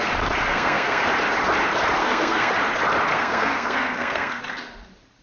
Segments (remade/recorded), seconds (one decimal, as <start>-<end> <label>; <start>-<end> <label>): 0.0-0.5 recorded; 0.5-1.1 remade; 1.1-2.0 recorded; 2.0-2.5 remade; 2.5-3.1 recorded; 3.1-4.4 remade; 4.4-5.2 recorded